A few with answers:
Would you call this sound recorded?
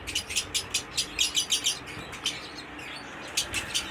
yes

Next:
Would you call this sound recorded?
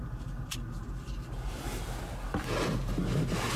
yes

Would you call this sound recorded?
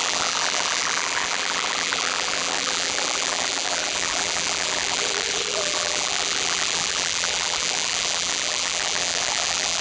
no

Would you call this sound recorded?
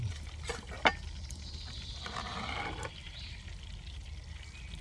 yes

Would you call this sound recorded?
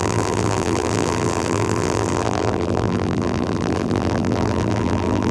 no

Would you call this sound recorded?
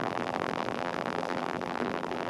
no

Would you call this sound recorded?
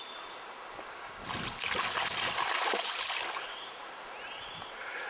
yes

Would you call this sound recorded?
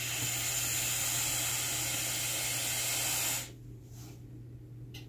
yes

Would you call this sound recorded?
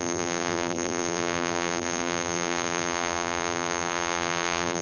no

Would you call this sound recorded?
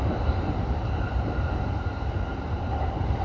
no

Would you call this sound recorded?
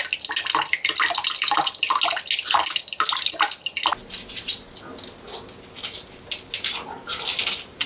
yes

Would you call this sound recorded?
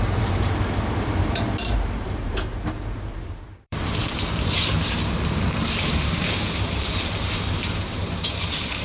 no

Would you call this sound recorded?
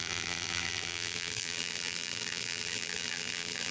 no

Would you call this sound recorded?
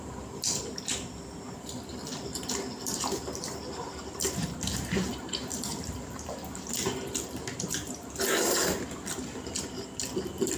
no